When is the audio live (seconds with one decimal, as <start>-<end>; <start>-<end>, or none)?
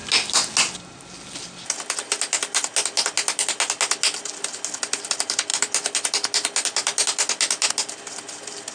0.0-8.7